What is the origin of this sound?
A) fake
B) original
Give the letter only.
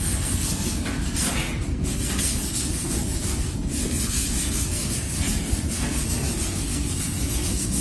A